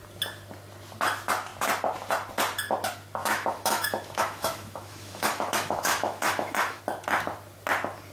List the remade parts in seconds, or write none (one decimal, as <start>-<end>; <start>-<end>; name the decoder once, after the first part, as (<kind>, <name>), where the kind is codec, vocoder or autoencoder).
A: 3.2-6.8 (autoencoder, DAC-VAE)